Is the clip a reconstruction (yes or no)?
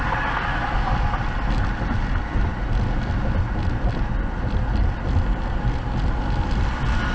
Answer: no